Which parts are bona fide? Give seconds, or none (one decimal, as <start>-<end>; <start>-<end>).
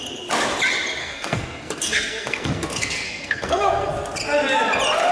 0.0-1.0; 3.9-5.1